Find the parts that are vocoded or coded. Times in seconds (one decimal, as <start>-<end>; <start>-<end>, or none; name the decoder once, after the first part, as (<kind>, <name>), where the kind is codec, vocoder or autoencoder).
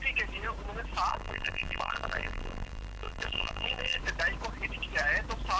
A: 1.1-4.0 (vocoder, BigVGAN v2)